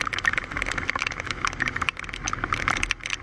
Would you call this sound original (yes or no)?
yes